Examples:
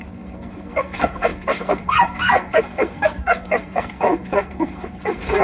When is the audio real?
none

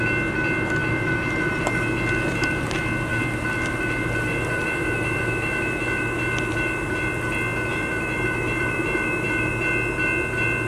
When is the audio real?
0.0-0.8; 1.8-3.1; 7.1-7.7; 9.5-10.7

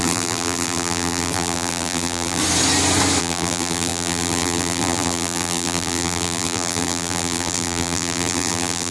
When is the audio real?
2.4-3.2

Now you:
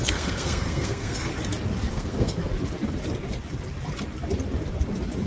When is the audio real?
1.3-1.9; 2.4-5.3

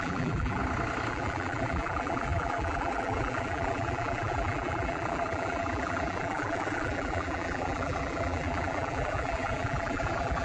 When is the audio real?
0.6-1.1

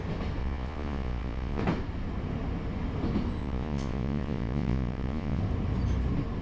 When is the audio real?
0.0-0.4; 1.6-3.4; 5.4-6.4

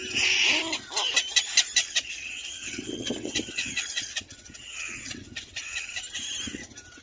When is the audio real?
0.0-1.8; 5.9-7.0